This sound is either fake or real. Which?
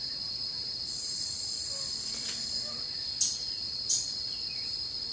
real